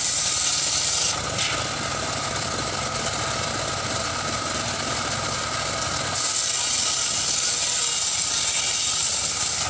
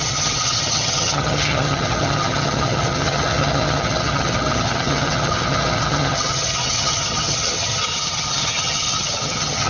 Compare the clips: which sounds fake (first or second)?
second